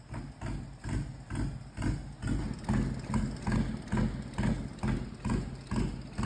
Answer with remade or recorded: recorded